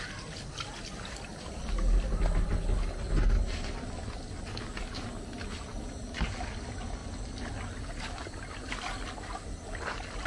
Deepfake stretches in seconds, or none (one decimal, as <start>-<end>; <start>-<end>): none